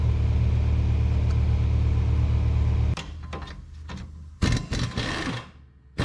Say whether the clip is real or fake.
real